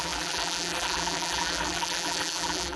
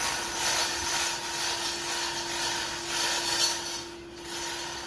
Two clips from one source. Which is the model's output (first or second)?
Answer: first